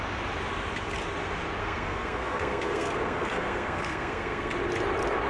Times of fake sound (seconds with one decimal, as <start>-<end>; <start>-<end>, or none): 1.6-4.5